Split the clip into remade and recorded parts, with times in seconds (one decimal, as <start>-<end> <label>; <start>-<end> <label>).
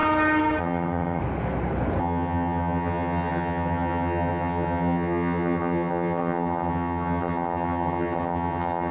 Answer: 0.0-0.6 recorded; 0.6-1.2 remade; 1.2-2.0 recorded; 2.0-8.9 remade